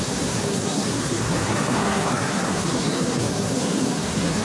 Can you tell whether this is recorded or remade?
remade